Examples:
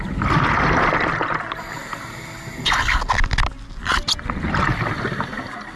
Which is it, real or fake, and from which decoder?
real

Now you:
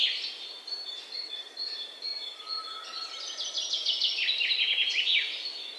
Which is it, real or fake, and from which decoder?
real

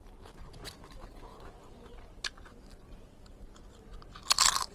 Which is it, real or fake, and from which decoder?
real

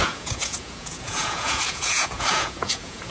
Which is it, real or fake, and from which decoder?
fake, vocoder, Vocos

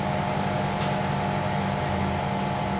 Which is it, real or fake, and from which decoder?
real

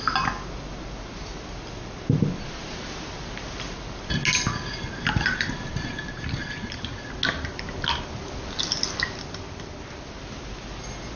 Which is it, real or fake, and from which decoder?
real